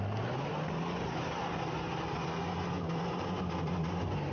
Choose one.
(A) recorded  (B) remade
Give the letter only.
A